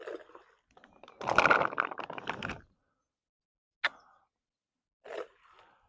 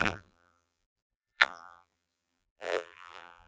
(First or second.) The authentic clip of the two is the first